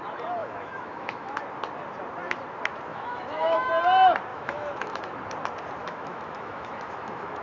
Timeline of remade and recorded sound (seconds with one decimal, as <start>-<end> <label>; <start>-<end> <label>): 0.0-0.4 recorded; 0.4-1.4 remade; 1.4-2.9 recorded; 2.9-3.7 remade; 3.7-4.3 recorded; 4.3-5.0 remade; 5.0-5.8 recorded; 5.8-7.4 remade